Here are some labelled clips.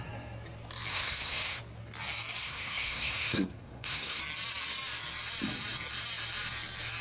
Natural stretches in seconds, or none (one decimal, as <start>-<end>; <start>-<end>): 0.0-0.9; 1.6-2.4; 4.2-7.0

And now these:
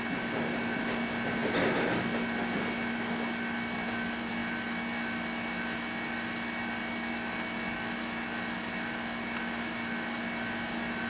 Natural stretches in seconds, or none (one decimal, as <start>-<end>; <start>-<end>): 0.0-11.1

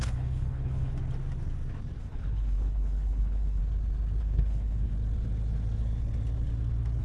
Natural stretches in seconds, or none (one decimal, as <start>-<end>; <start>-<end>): 0.9-2.0; 3.6-4.2; 4.9-7.0